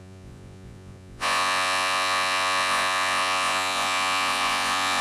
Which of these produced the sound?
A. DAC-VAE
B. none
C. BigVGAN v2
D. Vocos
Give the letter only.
D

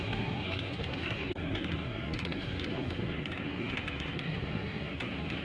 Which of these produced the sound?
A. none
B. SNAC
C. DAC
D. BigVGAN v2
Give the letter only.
B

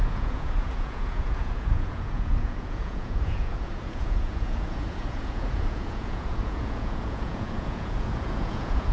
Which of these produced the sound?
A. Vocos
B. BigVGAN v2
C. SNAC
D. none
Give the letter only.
A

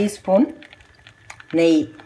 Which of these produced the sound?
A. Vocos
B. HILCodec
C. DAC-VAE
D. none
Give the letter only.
D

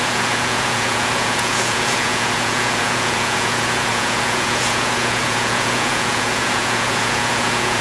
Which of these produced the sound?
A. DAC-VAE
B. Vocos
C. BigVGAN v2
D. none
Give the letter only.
B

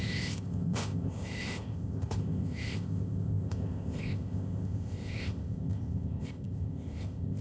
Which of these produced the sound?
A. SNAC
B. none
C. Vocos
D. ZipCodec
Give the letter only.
D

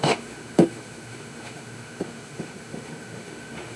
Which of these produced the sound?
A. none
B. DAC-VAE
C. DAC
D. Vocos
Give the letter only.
B